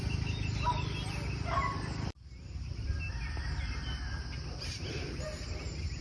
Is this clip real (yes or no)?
yes